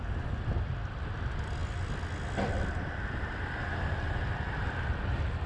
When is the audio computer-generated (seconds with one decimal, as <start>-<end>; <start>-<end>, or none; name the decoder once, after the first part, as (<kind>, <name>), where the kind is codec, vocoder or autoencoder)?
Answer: none